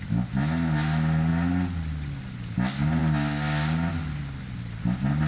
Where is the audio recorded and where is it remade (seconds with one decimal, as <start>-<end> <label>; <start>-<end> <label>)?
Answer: 0.0-5.3 recorded